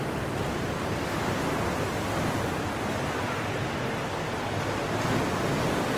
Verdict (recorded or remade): recorded